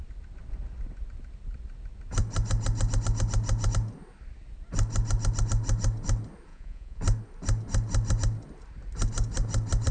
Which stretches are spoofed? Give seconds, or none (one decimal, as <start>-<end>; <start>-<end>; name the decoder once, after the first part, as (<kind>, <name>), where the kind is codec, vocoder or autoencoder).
6.5-7.0 (vocoder, Vocos)